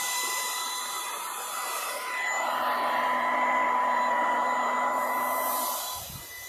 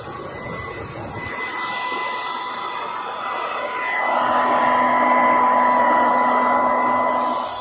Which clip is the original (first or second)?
second